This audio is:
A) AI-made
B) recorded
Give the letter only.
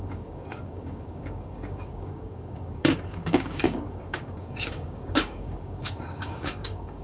A